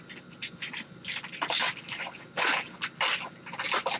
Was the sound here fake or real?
real